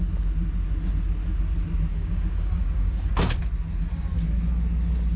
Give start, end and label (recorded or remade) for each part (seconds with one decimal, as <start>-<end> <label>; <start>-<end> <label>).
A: 0.0-1.9 recorded; 1.9-3.1 remade; 3.1-5.2 recorded